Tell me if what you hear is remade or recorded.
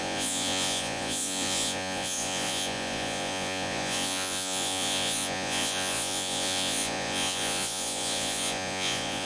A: remade